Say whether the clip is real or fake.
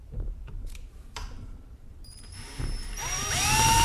fake